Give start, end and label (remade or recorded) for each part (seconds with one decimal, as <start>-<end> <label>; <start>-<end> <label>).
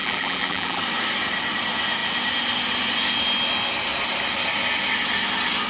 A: 0.0-0.8 remade; 0.8-5.7 recorded